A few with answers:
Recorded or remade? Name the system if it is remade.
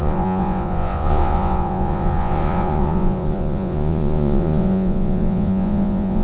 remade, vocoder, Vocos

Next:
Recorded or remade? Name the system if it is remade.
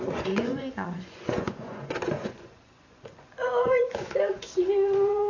remade, vocoder, Vocos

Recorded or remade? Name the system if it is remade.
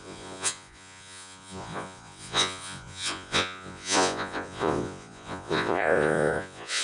remade, vocoder, Vocos